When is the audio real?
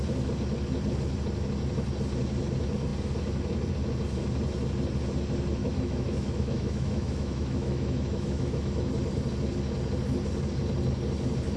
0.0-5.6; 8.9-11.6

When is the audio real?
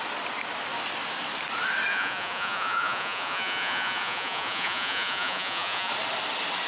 0.0-1.9; 5.9-6.7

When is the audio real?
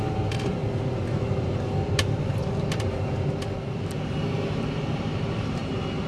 0.6-4.3; 5.6-6.1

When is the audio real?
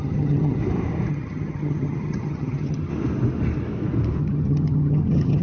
0.6-1.1; 2.9-4.2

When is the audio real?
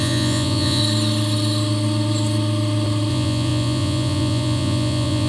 0.8-3.1